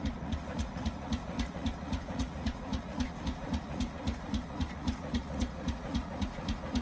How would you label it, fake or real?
fake